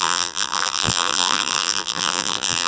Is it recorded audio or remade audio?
remade